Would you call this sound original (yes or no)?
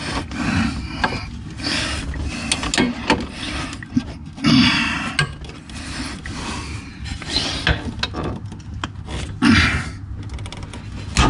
yes